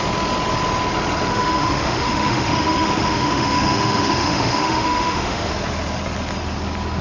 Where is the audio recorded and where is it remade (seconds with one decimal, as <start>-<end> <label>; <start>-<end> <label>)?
0.0-1.3 recorded; 1.3-5.5 remade; 5.5-7.0 recorded